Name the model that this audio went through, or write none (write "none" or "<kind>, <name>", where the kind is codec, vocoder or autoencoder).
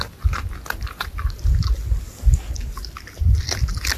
none